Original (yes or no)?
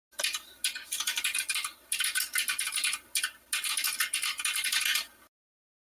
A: yes